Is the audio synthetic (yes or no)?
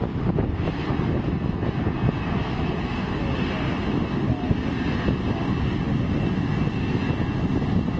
no